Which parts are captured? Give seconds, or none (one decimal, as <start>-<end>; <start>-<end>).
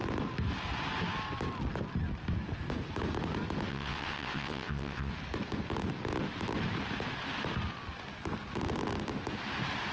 0.0-3.7; 5.1-9.9